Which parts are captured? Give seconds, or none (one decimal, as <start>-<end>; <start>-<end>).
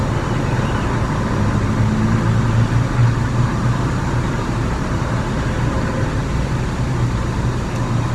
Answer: 0.0-3.0